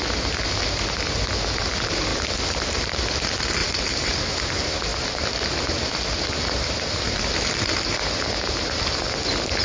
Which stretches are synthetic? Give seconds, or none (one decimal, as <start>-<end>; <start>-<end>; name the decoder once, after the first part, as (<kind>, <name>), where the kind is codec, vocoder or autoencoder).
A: 3.6-4.3 (vocoder, BigVGAN v2)